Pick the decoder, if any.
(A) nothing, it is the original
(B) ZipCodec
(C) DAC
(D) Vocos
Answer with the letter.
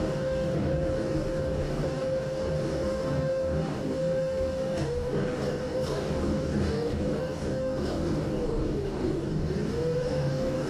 C